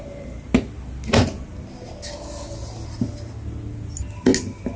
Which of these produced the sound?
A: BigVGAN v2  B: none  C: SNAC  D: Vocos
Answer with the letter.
B